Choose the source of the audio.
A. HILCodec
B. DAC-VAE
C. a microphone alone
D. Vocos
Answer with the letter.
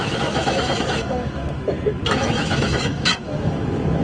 B